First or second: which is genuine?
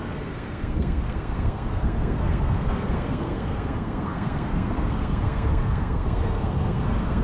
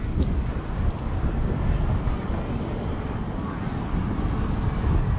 second